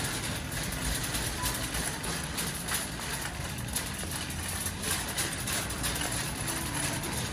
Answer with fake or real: real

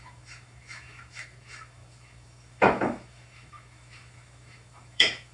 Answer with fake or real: fake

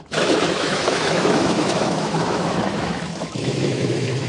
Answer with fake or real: fake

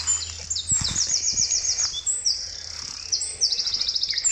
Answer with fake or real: real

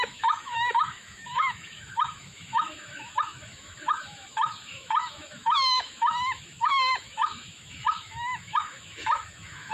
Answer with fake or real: fake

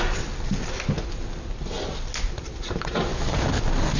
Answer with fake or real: real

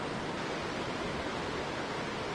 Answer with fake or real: real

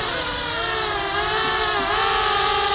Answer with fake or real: real